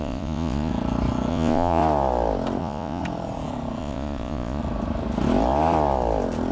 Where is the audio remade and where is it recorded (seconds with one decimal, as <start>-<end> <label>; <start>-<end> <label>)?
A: 0.0-0.7 remade; 0.7-1.3 recorded; 1.3-1.8 remade; 1.8-2.6 recorded; 2.6-3.0 remade; 3.0-3.8 recorded; 3.8-4.6 remade; 4.6-6.5 recorded